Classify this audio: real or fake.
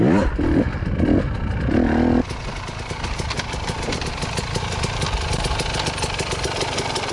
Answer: real